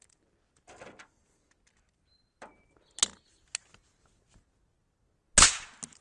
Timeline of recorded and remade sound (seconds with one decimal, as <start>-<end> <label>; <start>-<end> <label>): 0.0-6.0 recorded